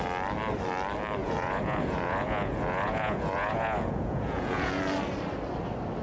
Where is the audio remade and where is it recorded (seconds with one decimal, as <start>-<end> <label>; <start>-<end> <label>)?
0.0-1.2 recorded; 1.2-4.8 remade; 4.8-6.0 recorded